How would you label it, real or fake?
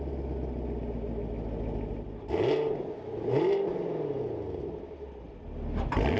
real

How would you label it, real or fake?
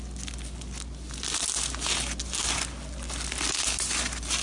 real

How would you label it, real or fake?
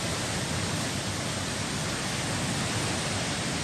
real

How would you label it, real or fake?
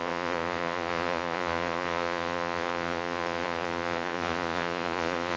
fake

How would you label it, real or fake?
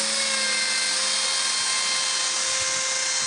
real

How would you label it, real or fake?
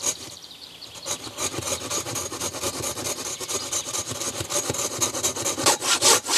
fake